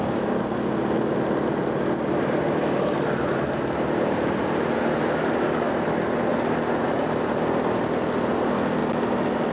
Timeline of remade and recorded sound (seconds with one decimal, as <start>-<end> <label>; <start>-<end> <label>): 0.0-9.5 recorded